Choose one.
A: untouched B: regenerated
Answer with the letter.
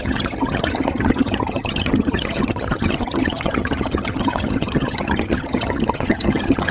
B